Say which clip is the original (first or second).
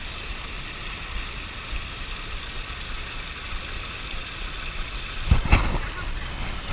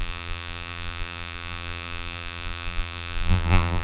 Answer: first